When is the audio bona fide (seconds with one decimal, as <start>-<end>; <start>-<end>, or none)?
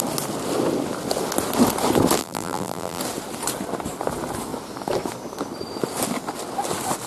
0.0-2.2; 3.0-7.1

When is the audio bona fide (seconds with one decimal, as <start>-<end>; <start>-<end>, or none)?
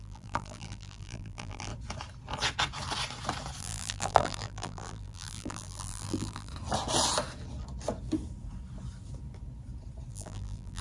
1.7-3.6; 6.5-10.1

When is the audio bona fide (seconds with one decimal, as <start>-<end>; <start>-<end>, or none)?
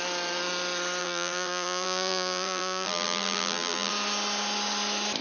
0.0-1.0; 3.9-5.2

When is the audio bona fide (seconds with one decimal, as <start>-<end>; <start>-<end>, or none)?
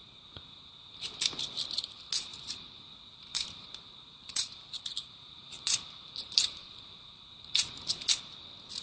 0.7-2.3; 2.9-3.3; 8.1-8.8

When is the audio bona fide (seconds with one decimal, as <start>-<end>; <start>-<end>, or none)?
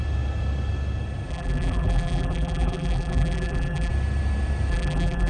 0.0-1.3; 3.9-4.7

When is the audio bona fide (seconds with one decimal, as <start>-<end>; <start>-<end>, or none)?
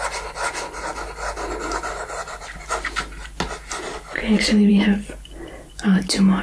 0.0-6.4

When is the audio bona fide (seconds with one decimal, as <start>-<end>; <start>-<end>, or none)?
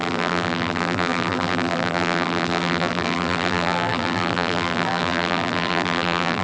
none